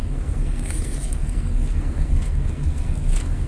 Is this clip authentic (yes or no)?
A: no